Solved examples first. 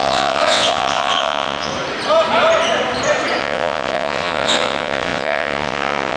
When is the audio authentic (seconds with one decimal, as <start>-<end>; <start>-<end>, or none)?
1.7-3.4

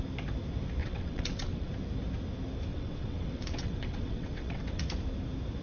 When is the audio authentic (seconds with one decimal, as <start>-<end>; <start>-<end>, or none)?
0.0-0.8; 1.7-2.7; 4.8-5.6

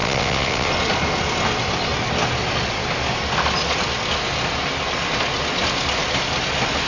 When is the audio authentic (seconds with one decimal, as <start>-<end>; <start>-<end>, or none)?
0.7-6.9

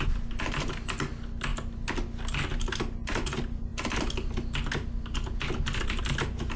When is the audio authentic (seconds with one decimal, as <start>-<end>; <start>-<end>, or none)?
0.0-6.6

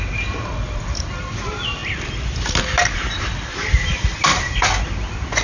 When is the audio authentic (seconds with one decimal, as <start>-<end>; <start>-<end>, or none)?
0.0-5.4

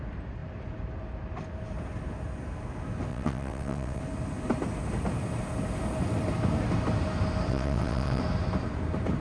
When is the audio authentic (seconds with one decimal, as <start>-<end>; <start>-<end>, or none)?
0.0-3.1; 4.0-7.5; 8.2-9.2